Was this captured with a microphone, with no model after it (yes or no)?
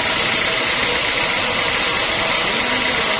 yes